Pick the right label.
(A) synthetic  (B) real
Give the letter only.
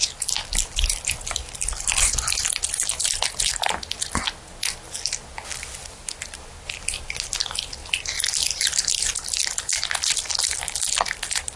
B